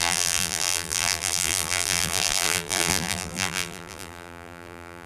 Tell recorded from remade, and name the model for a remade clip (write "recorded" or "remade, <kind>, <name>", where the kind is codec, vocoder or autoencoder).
remade, vocoder, BigVGAN v2